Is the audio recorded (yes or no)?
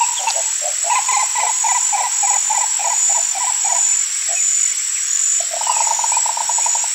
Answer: yes